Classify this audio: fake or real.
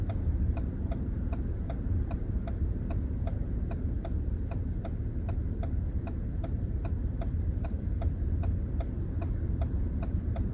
fake